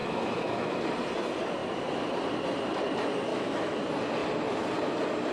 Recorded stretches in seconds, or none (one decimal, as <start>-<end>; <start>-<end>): 0.8-3.3; 3.8-5.3